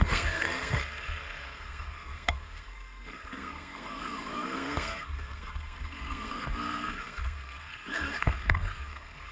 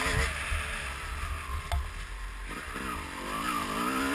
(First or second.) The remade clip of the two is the first